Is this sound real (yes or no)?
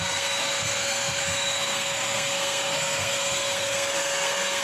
no